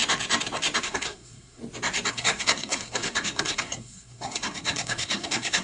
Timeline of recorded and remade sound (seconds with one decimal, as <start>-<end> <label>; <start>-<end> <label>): 0.0-0.8 recorded; 0.8-1.6 remade; 1.6-2.1 recorded; 2.1-5.6 remade